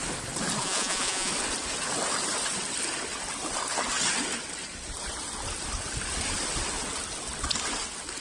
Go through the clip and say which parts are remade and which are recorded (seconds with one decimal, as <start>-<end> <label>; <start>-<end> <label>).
0.0-0.6 recorded; 0.6-1.3 remade; 1.3-8.2 recorded